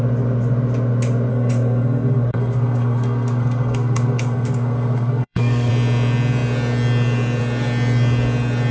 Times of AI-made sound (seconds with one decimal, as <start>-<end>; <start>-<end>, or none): 1.3-5.7